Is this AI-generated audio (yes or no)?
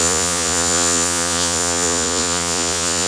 yes